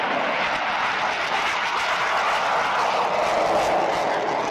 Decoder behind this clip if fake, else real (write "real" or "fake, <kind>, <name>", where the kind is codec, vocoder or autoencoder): real